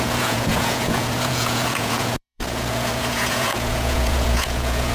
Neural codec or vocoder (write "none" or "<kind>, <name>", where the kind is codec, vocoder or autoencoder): vocoder, Vocos